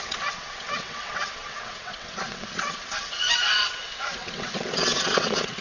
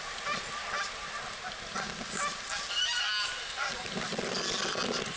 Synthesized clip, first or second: first